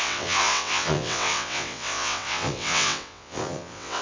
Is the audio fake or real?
fake